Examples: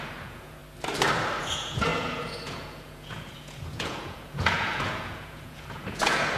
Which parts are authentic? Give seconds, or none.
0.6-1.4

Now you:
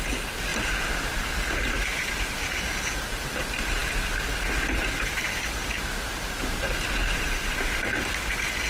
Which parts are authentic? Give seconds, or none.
0.0-0.5; 1.3-7.0; 7.8-8.7

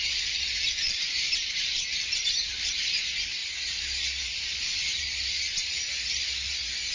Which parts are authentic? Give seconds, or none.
3.4-4.2

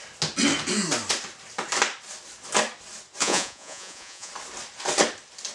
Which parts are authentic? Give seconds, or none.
0.0-3.2; 4.3-5.5

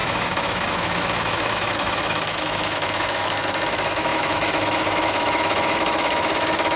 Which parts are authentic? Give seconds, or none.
none

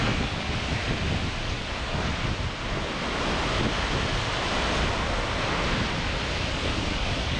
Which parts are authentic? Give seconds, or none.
0.8-1.4; 2.1-6.5

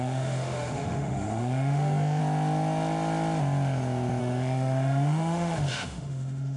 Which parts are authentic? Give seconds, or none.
2.2-4.2